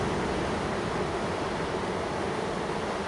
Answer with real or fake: real